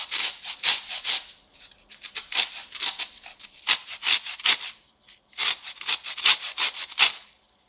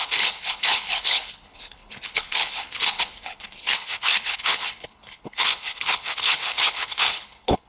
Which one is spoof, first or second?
second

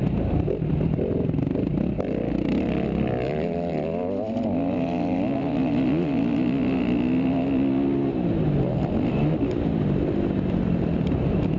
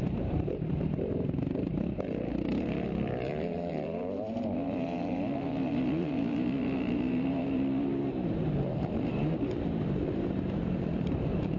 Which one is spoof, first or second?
second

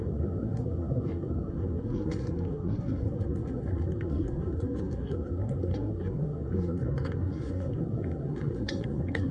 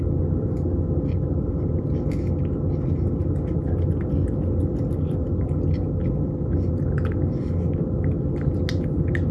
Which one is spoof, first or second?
first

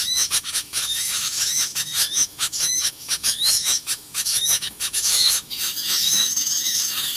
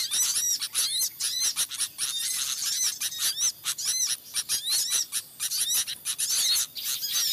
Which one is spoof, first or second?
first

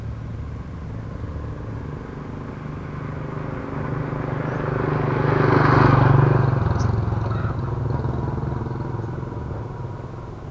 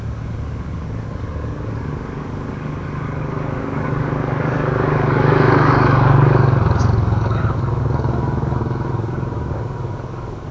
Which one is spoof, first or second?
second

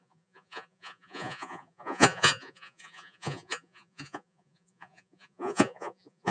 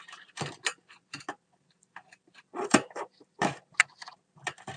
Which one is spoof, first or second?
first